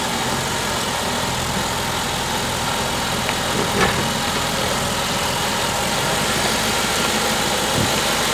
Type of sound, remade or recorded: recorded